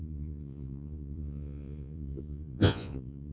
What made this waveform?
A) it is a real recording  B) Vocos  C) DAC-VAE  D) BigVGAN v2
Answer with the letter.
B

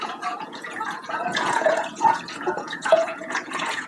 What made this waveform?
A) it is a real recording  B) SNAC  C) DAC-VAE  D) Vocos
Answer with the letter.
D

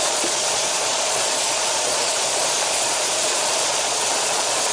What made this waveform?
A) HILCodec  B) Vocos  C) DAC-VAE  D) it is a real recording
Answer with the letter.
B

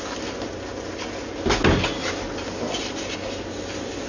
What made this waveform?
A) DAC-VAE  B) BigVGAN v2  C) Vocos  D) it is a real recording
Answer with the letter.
D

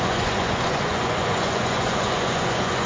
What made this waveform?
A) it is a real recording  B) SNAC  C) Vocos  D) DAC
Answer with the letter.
C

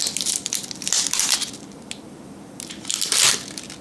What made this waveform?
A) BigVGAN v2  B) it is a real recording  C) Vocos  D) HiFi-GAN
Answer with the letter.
B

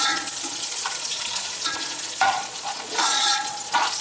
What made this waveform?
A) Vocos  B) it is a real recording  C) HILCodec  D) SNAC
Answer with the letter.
A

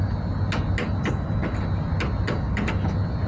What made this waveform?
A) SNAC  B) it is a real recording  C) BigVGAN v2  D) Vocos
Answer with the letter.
B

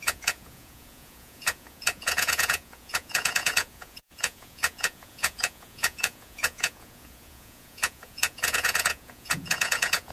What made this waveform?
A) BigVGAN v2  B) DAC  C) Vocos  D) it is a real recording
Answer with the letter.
C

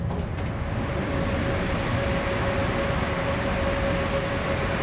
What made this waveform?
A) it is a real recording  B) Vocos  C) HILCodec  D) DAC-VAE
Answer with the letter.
A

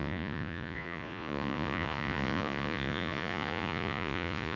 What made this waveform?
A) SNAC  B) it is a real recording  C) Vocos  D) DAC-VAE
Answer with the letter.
C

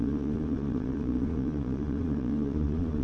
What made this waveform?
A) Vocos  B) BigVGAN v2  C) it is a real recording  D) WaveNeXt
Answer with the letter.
A